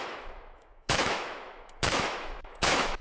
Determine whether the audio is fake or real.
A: fake